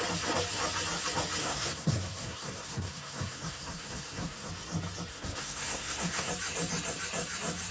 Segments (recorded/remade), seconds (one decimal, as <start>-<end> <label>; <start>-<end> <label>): 0.0-1.4 recorded; 1.4-4.5 remade; 4.5-5.1 recorded; 5.1-6.3 remade; 6.3-7.7 recorded